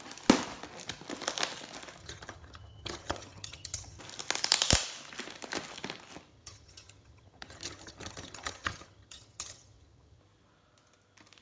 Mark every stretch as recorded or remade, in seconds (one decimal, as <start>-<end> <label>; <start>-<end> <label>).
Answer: 0.0-2.0 recorded; 2.0-4.0 remade; 4.0-6.3 recorded; 6.3-10.2 remade; 10.2-11.4 recorded